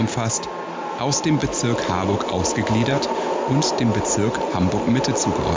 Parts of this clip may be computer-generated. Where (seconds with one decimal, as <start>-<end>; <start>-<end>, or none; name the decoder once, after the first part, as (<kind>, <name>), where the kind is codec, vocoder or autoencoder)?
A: 1.4-3.0 (vocoder, BigVGAN v2); 3.9-5.0